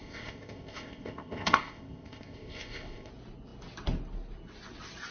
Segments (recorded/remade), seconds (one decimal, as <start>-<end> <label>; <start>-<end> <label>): 0.0-3.1 remade; 3.1-5.1 recorded